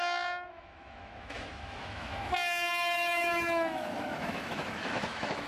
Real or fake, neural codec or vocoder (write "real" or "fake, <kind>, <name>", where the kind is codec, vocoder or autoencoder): fake, autoencoder, DAC-VAE